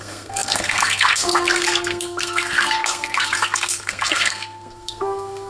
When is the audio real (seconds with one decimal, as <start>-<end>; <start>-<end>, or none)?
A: none